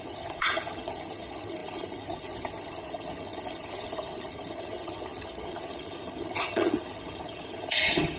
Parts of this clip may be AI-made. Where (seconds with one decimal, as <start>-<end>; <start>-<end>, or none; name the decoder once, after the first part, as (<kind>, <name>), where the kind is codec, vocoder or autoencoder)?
0.0-8.2 (vocoder, HiFi-GAN)